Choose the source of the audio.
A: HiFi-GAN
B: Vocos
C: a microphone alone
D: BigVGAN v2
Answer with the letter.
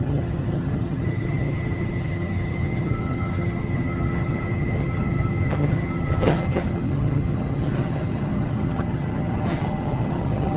A